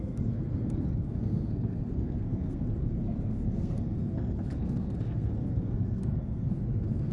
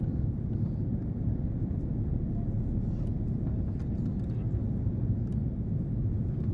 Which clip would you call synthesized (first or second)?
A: first